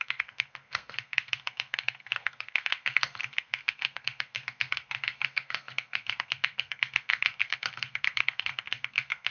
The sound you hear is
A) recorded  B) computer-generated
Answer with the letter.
B